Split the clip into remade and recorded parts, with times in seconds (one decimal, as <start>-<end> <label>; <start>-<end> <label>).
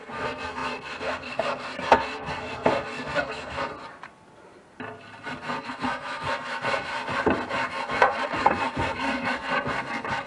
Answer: 0.0-3.7 remade; 3.7-5.6 recorded; 5.6-6.9 remade; 6.9-7.7 recorded; 7.7-10.3 remade